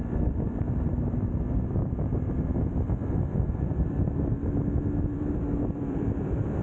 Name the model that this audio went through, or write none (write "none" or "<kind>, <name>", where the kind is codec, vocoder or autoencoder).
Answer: vocoder, BigVGAN v2